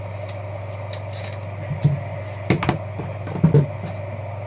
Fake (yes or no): no